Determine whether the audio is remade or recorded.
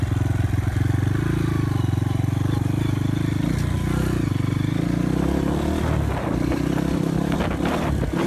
recorded